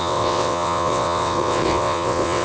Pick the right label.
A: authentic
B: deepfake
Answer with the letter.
B